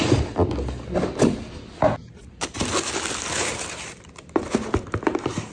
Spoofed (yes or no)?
yes